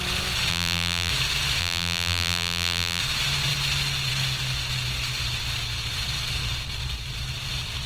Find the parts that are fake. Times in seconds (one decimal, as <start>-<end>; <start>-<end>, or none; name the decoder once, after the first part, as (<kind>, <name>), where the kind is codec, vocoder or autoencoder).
0.5-1.1 (vocoder, BigVGAN v2); 1.6-3.0

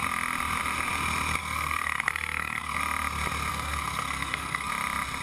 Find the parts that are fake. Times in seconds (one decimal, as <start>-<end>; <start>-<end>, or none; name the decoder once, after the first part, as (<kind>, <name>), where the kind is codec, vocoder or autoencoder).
1.4-2.8 (codec, SNAC); 3.5-4.7

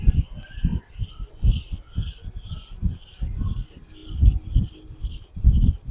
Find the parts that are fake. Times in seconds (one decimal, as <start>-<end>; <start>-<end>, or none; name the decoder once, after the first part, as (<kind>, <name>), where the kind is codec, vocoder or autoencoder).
none

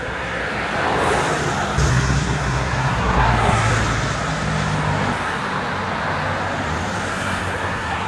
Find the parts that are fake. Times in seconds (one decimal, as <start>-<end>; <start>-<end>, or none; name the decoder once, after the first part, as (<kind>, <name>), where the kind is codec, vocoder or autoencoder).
0.0-0.4 (codec, SNAC); 1.9-3.7; 7.1-8.1

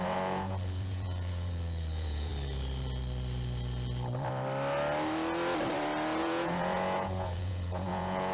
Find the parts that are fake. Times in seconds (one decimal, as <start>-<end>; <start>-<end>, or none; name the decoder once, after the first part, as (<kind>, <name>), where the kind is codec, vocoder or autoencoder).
0.0-2.3 (vocoder, Vocos); 6.2-8.3